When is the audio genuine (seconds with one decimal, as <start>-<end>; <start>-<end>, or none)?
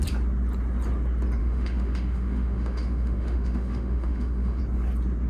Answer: 0.0-1.4; 4.6-5.3